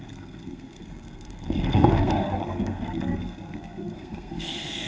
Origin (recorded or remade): remade